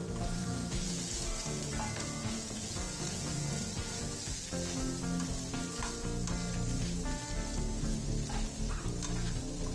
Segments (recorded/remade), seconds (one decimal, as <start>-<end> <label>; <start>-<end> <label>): 0.0-4.0 remade; 4.0-9.7 recorded